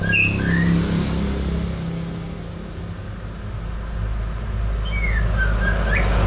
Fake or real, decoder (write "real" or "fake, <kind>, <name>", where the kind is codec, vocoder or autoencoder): real